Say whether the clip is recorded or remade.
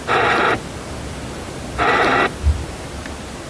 recorded